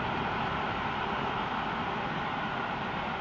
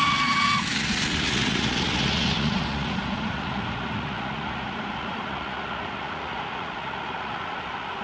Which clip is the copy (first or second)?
second